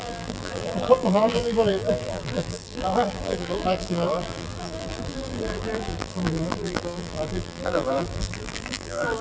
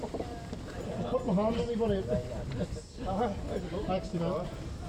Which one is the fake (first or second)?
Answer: first